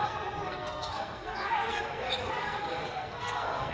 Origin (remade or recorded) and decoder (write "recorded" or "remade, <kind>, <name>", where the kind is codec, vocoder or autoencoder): remade, codec, SNAC